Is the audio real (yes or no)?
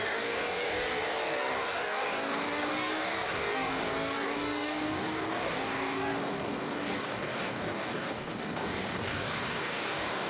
no